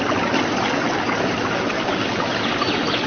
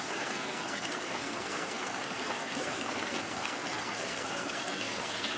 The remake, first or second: second